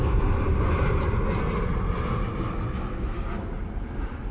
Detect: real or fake real